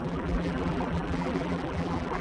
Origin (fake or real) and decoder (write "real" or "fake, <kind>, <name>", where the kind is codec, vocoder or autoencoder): fake, vocoder, BigVGAN v2